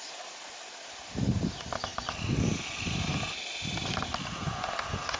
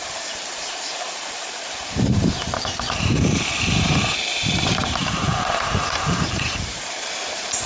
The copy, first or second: second